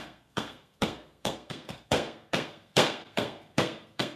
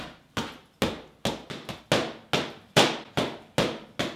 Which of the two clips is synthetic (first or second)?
first